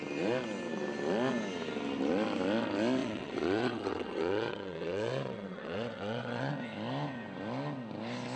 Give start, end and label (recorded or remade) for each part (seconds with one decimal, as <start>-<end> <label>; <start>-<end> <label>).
0.0-3.0 recorded; 3.0-6.5 remade; 6.5-8.4 recorded